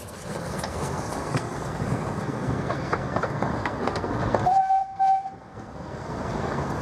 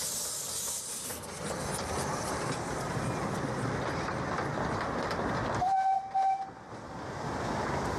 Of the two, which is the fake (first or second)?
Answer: first